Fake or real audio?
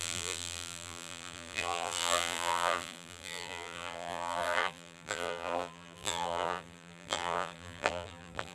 fake